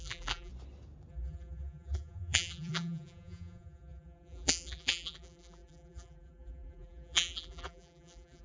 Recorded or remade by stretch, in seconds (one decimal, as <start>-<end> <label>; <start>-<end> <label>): 0.0-0.5 remade; 0.5-1.1 recorded; 1.1-8.4 remade